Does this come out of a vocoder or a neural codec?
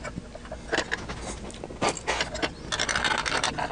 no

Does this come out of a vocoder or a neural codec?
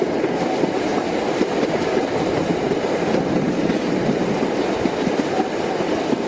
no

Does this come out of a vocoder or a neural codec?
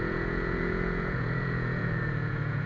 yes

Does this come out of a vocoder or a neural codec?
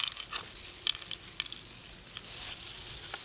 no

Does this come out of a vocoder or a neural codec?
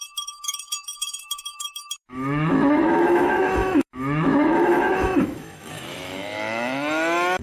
yes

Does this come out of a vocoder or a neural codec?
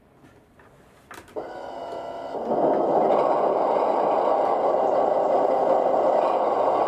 no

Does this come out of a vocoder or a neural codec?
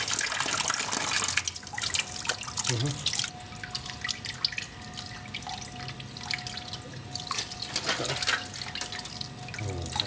no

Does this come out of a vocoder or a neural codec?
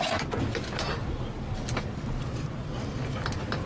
no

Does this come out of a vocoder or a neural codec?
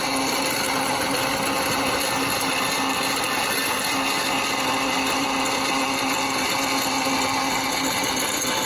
no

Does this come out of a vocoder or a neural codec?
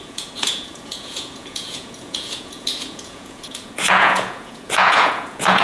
yes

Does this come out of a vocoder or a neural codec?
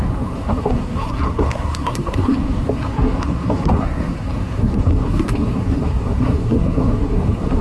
yes